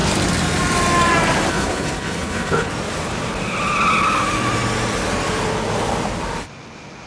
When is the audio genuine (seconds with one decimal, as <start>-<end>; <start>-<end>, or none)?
0.0-1.5; 2.7-7.1